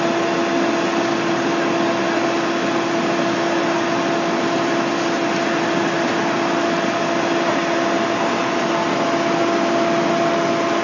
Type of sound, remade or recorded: recorded